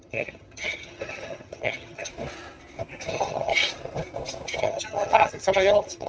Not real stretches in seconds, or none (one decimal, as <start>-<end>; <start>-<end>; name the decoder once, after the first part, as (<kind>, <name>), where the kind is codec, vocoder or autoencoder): 0.0-2.1 (vocoder, HiFi-GAN); 3.1-3.5; 4.6-6.1

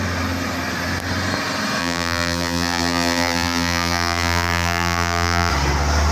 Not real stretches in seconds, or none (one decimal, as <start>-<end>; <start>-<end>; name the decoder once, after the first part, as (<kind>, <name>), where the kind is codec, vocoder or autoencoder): 1.8-5.5 (vocoder, BigVGAN v2)

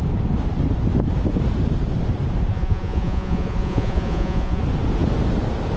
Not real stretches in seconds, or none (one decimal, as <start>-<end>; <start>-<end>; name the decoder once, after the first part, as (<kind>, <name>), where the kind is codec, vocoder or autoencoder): 2.5-4.6 (vocoder, Vocos)